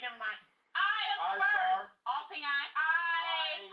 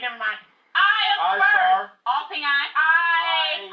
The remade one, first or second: first